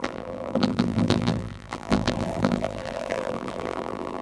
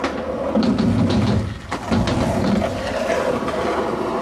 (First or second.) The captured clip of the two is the second